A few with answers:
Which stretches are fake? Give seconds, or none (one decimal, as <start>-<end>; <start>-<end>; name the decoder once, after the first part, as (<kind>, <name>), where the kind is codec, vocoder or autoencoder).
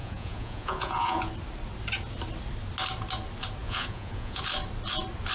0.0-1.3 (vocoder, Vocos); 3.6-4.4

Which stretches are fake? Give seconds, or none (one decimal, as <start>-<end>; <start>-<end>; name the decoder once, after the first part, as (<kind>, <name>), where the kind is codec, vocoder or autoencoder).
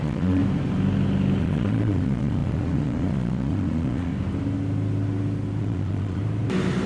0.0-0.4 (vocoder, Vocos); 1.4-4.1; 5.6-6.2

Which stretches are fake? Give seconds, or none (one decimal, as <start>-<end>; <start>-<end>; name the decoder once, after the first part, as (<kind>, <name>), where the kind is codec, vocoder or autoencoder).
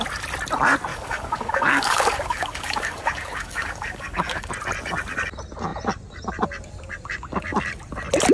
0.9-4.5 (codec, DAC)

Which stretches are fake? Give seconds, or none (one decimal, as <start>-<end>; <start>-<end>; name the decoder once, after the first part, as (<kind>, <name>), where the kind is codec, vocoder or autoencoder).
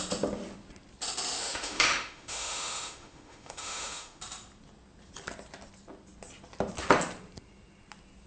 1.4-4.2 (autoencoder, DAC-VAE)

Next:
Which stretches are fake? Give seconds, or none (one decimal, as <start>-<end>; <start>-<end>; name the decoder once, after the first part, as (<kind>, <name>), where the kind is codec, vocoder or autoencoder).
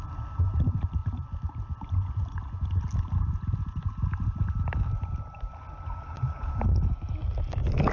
none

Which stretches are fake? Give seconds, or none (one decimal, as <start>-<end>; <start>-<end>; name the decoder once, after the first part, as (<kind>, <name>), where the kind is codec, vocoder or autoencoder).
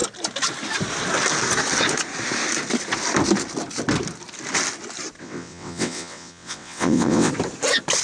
5.2-7.3 (vocoder, WaveNeXt)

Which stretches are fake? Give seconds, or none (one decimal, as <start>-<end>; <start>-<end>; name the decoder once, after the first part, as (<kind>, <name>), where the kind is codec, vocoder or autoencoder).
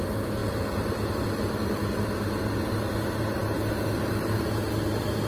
none